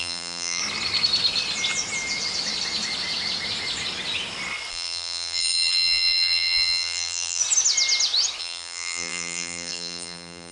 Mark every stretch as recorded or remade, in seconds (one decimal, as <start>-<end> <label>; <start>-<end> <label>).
0.0-0.6 remade; 0.6-4.7 recorded; 4.7-7.4 remade; 7.4-8.4 recorded; 8.4-10.5 remade